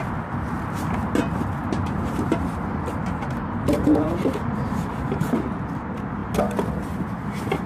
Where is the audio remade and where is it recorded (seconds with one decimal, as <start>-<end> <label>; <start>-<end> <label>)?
0.0-1.6 recorded; 1.6-5.2 remade; 5.2-7.7 recorded